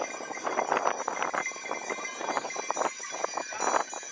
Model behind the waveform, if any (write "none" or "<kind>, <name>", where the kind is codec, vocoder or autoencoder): none